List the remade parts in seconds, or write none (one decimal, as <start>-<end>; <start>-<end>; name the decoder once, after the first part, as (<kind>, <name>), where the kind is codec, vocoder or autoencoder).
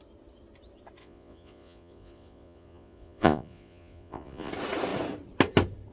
1.0-4.5 (vocoder, Vocos)